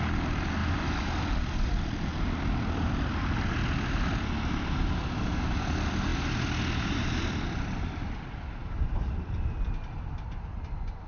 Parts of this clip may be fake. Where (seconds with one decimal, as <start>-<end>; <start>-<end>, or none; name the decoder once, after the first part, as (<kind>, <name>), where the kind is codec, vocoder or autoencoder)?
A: none